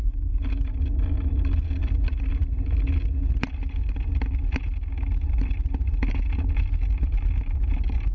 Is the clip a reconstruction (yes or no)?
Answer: no